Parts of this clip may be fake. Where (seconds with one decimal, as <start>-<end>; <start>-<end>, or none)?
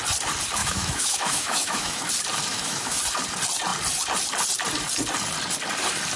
0.6-2.0; 2.5-3.0